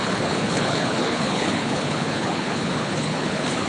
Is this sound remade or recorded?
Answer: remade